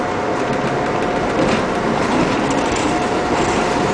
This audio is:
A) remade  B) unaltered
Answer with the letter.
A